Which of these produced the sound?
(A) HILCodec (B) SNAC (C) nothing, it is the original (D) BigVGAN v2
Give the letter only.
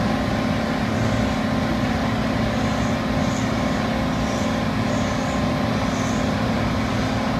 C